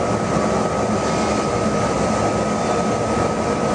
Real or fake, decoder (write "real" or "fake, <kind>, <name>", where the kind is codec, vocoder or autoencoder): real